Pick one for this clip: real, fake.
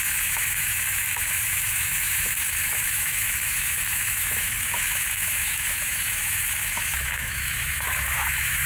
fake